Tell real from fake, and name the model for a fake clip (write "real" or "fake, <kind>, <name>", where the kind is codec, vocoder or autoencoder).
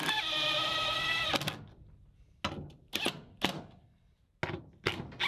real